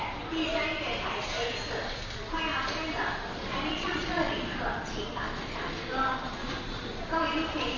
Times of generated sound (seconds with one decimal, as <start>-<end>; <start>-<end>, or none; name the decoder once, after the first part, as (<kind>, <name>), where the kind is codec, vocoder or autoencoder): 3.7-4.3 (vocoder, Vocos)